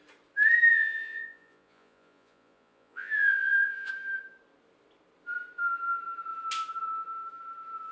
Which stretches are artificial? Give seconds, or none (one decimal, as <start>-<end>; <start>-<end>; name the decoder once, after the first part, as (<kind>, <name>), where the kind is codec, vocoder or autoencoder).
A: 0.7-3.9 (vocoder, Vocos)